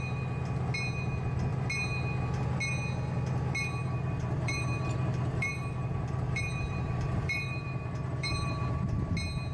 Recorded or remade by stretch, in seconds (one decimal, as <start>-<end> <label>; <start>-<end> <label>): 0.0-3.8 recorded; 3.8-9.0 remade; 9.0-9.5 recorded